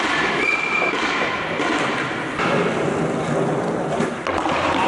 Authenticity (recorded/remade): recorded